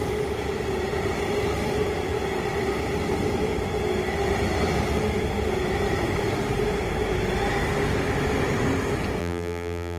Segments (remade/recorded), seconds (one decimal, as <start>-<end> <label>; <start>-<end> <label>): 0.0-9.2 recorded; 9.2-10.0 remade